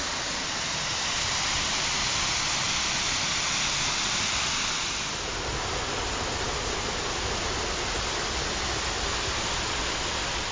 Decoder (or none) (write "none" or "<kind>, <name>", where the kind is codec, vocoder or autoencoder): none